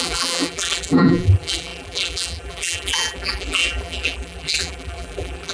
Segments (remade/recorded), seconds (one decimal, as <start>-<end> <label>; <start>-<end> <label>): 0.0-5.5 remade